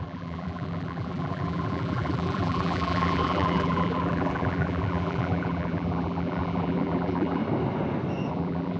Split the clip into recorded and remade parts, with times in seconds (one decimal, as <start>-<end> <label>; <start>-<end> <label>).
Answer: 0.0-7.4 remade; 7.4-8.3 recorded; 8.3-8.8 remade